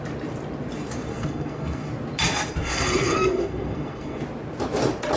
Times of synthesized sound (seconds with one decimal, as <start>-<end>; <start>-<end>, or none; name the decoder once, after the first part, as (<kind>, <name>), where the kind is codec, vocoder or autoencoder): 1.1-1.9 (codec, SNAC); 2.6-4.2